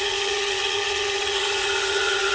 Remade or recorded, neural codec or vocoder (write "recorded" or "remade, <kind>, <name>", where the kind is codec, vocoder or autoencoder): remade, vocoder, HiFi-GAN